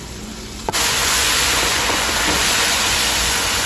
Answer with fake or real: fake